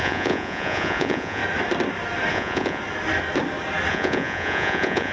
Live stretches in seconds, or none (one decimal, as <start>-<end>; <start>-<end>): 1.4-2.3; 2.8-3.9